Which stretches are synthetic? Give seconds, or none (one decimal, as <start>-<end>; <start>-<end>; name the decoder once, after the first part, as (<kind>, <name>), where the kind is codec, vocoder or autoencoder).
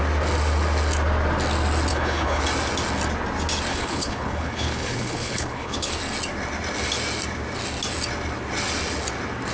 1.9-2.4 (codec, HILCodec); 3.7-5.9